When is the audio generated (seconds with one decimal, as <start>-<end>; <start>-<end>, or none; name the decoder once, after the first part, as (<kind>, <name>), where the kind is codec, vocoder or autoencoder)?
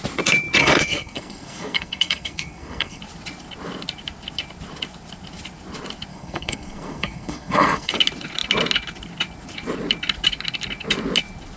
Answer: 0.6-3.0 (codec, SNAC); 6.1-8.0